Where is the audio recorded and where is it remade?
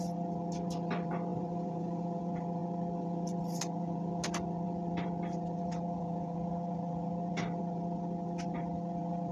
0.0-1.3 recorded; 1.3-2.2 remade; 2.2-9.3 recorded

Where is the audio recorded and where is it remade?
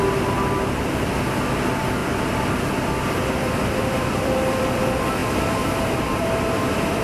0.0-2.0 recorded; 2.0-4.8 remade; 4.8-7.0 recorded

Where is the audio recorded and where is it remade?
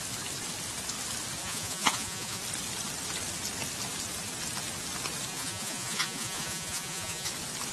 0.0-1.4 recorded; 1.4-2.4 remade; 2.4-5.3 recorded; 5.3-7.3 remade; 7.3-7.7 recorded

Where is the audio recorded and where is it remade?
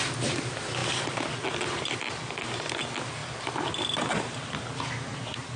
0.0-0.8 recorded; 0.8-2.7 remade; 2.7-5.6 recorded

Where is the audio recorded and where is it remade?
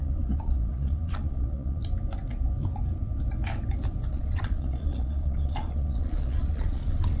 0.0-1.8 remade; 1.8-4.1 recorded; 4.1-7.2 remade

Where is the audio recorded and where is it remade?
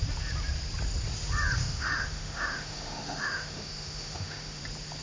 0.0-1.6 recorded; 1.6-4.6 remade; 4.6-5.0 recorded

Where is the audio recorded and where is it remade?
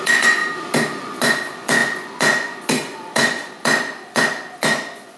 0.0-0.4 remade; 0.4-1.0 recorded; 1.0-5.2 remade